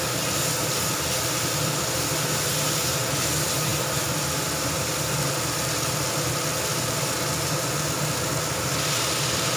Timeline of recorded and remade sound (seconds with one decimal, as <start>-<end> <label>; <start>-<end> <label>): 0.0-9.6 recorded